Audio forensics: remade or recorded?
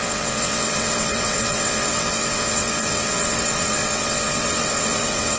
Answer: remade